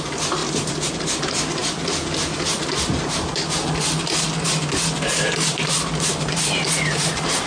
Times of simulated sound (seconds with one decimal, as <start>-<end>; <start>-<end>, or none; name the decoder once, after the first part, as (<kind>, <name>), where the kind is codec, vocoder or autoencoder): 0.4-0.9 (vocoder, BigVGAN v2)